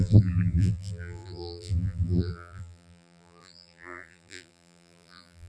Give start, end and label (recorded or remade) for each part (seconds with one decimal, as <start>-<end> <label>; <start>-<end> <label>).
0.0-5.5 remade